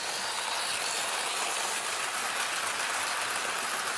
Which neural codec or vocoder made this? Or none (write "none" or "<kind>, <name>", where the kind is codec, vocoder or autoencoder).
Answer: none